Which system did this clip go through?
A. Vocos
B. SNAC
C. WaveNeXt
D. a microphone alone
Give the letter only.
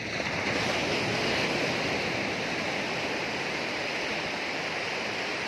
D